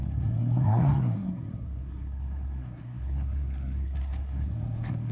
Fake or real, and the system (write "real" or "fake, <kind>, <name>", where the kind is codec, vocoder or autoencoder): fake, codec, SNAC